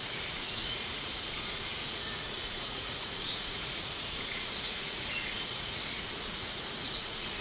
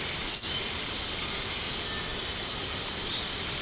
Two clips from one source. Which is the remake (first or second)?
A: first